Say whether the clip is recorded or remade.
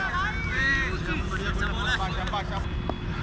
recorded